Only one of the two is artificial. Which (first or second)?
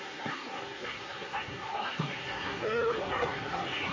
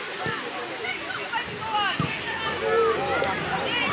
first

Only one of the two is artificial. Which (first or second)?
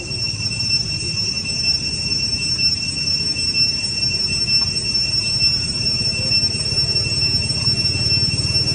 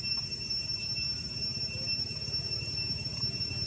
second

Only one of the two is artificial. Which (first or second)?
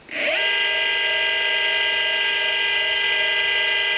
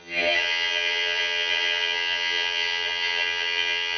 second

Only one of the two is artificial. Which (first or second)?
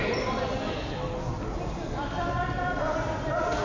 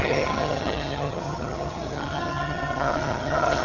second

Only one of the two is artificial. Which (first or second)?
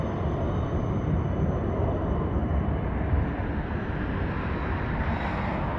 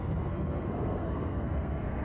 second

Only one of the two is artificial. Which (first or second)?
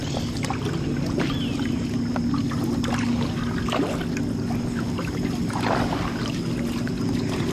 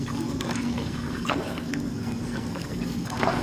second